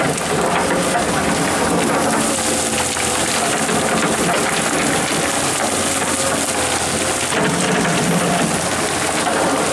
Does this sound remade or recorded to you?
recorded